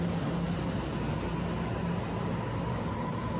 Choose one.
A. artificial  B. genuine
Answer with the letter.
B